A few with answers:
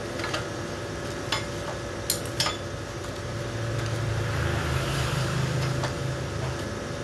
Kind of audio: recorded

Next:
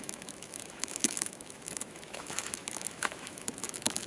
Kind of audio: remade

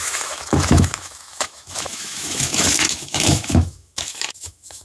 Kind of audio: remade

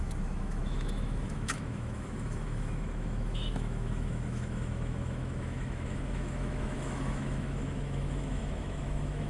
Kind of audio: remade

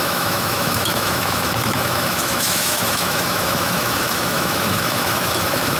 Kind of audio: remade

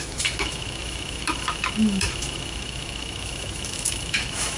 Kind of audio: remade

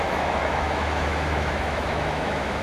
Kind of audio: remade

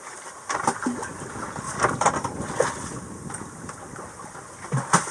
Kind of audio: recorded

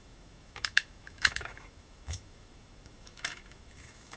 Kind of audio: remade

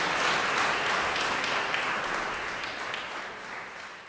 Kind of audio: recorded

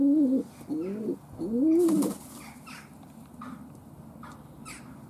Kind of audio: recorded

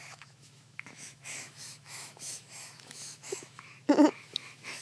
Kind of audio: remade